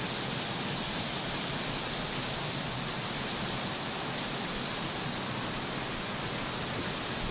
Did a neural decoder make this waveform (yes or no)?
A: no